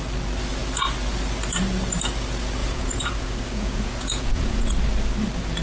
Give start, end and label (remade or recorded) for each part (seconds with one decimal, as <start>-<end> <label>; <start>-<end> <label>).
0.0-2.6 recorded; 2.6-4.7 remade; 4.7-5.6 recorded